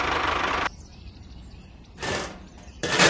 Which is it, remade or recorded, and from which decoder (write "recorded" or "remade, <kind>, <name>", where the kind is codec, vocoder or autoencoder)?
remade, vocoder, BigVGAN v2